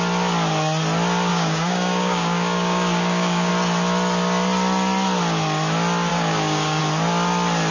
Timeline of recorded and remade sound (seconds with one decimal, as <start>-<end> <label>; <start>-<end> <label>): 0.0-1.3 recorded; 1.3-3.5 remade; 3.5-6.1 recorded; 6.1-6.8 remade; 6.8-7.7 recorded